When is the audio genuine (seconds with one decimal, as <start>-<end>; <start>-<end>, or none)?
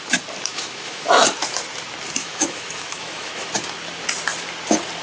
0.0-0.5; 1.2-2.2; 3.5-5.0